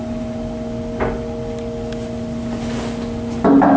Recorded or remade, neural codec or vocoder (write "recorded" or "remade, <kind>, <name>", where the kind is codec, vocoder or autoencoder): recorded